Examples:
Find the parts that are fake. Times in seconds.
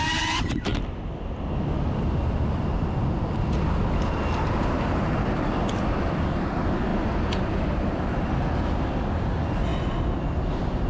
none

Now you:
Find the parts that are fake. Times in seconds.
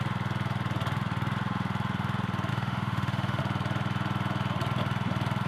2.5-3.4 (autoencoder, DAC-VAE)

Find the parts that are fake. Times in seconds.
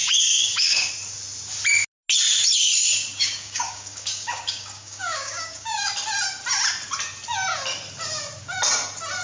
0.0-0.9 (codec, DAC); 2.8-5.9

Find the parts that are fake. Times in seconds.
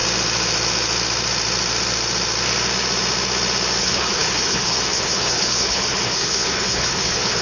3.8-7.4 (codec, HILCodec)